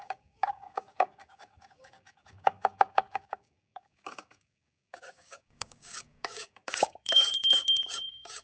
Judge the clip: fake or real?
fake